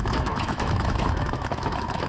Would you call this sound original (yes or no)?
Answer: no